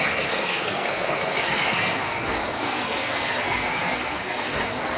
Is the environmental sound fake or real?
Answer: fake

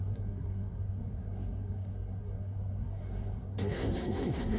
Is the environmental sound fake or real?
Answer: fake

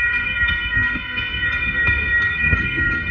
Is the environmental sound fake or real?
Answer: fake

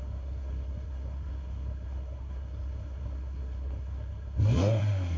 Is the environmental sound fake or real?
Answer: fake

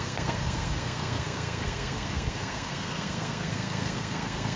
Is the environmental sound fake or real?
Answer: fake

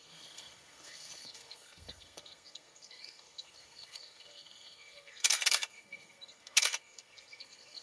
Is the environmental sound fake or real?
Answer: fake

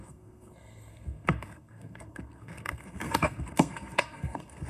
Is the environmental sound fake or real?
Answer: fake